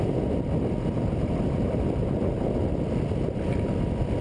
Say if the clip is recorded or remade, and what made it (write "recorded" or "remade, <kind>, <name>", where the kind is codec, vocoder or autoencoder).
recorded